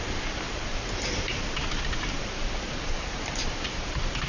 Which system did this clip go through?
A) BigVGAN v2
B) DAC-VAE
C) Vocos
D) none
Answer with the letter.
A